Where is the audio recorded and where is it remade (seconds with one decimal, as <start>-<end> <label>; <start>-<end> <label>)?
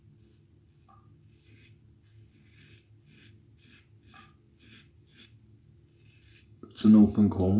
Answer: 0.0-6.3 recorded; 6.3-7.6 remade